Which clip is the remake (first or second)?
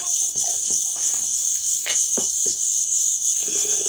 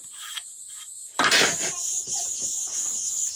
first